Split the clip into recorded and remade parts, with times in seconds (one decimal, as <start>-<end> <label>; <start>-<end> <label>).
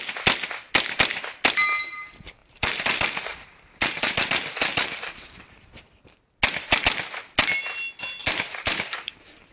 0.0-2.4 recorded; 2.4-6.2 remade; 6.2-8.2 recorded; 8.2-9.5 remade